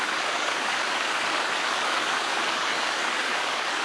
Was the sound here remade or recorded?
remade